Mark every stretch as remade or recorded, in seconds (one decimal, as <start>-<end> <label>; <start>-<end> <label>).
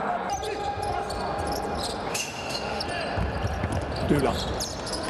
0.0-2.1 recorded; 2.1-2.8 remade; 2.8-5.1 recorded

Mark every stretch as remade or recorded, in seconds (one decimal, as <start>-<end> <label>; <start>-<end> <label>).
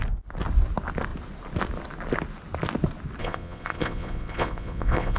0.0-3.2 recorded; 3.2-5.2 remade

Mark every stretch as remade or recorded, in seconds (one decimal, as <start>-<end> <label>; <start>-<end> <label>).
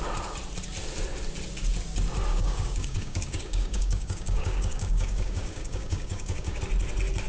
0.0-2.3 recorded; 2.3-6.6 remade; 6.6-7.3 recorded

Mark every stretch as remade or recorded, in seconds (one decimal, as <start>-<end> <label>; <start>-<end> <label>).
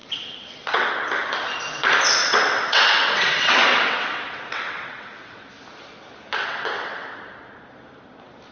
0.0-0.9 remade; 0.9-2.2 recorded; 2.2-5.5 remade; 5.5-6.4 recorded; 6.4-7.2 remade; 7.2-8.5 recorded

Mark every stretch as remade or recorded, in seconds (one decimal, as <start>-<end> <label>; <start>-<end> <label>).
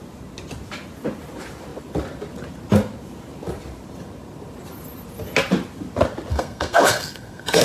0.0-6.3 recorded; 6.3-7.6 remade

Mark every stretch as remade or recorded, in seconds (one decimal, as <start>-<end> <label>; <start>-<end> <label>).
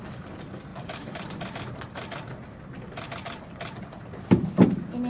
0.0-5.1 recorded